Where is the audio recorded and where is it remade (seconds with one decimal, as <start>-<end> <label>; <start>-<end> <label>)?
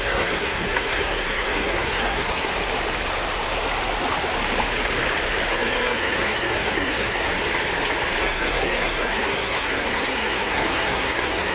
0.0-2.5 remade; 2.5-5.5 recorded; 5.5-7.3 remade; 7.3-8.2 recorded; 8.2-11.5 remade